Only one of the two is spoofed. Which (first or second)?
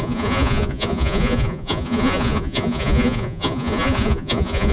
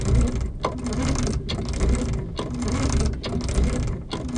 first